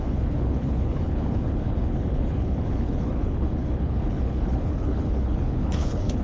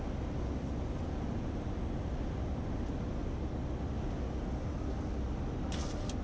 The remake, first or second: first